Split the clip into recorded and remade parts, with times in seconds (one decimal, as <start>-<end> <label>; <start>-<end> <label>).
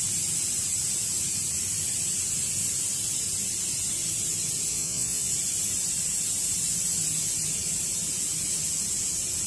0.0-4.7 recorded; 4.7-5.3 remade; 5.3-9.5 recorded